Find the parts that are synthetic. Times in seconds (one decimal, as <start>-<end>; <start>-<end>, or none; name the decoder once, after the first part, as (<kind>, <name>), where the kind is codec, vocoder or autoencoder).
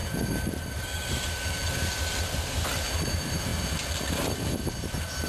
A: 1.1-3.5 (vocoder, BigVGAN v2); 4.5-5.3